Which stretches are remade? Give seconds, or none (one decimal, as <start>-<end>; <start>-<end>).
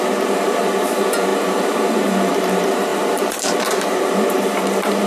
0.0-5.1